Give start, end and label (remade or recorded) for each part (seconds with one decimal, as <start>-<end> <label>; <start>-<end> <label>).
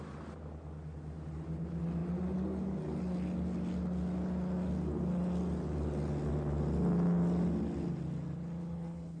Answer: 0.0-8.6 recorded; 8.6-9.2 remade